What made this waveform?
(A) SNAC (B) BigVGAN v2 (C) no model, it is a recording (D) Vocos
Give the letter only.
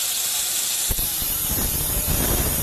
B